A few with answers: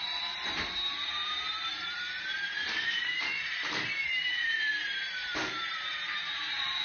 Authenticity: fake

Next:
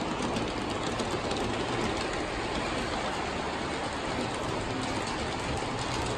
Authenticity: real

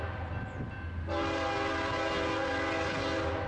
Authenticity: real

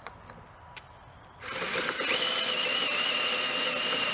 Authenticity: real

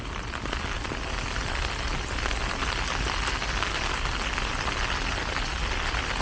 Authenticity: real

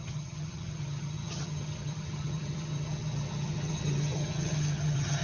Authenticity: fake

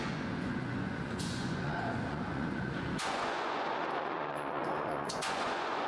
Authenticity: fake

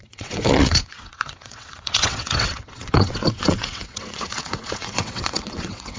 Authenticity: fake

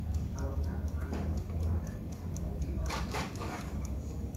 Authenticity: fake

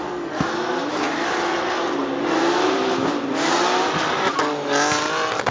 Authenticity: real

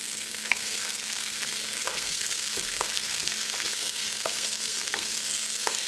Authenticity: fake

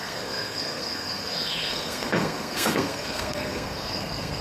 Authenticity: fake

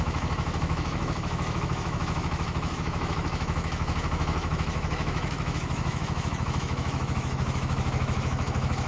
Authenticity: fake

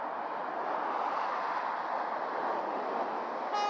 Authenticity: real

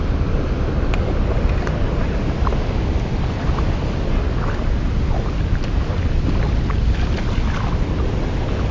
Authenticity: real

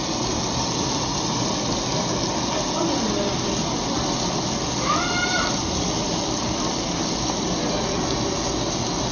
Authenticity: real